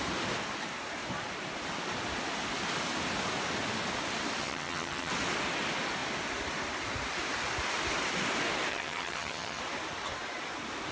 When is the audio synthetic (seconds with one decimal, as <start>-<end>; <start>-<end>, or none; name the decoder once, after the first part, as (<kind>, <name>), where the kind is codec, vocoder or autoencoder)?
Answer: 4.4-5.1 (vocoder, HiFi-GAN); 8.7-9.6